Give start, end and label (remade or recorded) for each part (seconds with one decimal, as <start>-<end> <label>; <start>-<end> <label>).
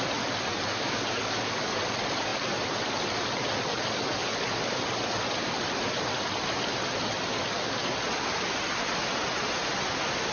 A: 0.0-0.7 recorded; 0.7-1.5 remade; 1.5-10.3 recorded